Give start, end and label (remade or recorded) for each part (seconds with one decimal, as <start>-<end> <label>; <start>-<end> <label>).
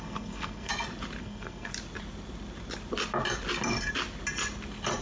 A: 0.0-0.7 remade; 0.7-1.2 recorded; 1.2-1.7 remade; 1.7-5.0 recorded